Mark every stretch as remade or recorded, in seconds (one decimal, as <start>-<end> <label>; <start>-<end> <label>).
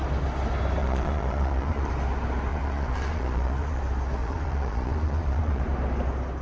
0.0-0.8 recorded; 0.8-1.9 remade; 1.9-2.5 recorded; 2.5-3.8 remade; 3.8-4.2 recorded; 4.2-5.6 remade; 5.6-6.4 recorded